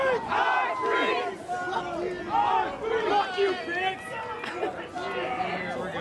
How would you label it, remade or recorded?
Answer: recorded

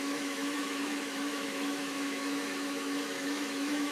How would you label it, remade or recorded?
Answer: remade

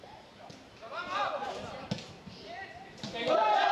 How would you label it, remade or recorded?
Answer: recorded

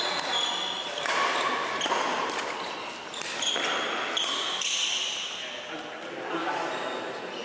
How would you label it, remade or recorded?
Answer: recorded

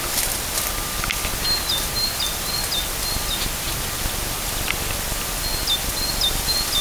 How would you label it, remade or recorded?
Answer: recorded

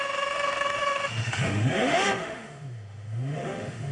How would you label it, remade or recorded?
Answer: remade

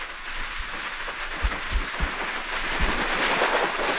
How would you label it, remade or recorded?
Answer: recorded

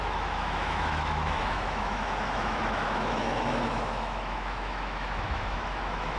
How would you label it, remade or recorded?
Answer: remade